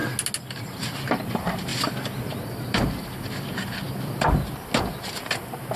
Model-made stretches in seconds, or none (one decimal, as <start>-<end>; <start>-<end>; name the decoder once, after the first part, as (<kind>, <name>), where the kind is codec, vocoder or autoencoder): 0.6-1.7 (vocoder, BigVGAN v2); 5.2-5.8

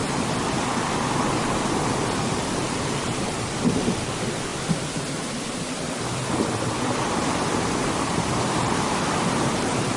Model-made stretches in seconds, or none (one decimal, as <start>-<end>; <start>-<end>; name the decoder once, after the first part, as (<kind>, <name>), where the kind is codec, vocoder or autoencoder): 2.2-4.5 (vocoder, BigVGAN v2); 7.9-10.0

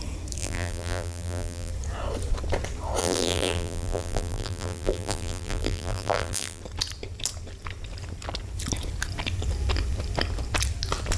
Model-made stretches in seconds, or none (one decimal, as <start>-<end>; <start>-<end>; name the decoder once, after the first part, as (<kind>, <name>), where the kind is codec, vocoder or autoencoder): 0.4-1.7 (vocoder, BigVGAN v2); 3.0-6.6